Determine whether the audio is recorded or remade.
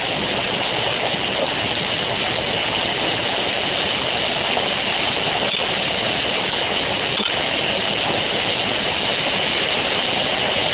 recorded